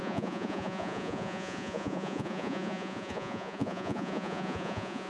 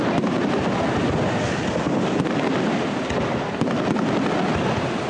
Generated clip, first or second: first